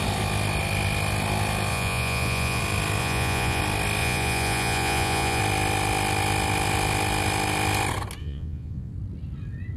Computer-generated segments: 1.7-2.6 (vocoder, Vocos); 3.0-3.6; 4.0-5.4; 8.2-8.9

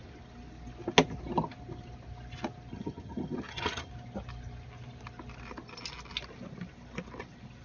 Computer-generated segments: 2.7-3.9 (vocoder, HiFi-GAN)

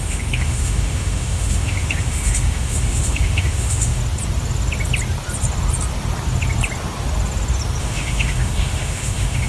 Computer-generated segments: 0.0-4.0 (autoencoder, DAC-VAE); 7.8-9.5

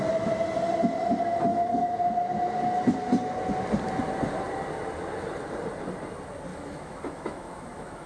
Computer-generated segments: 1.5-2.0 (autoencoder, DAC-VAE); 6.5-8.1

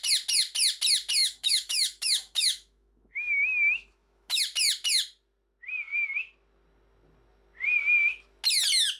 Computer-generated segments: 1.2-4.4 (autoencoder, DAC-VAE)

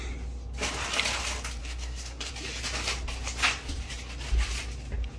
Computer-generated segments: 1.6-2.3 (codec, SNAC)